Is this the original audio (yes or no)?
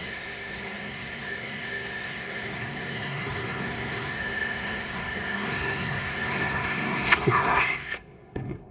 no